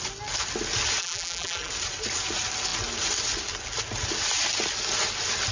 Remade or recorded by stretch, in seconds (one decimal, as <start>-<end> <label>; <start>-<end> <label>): 0.0-1.0 recorded; 1.0-1.7 remade; 1.7-5.5 recorded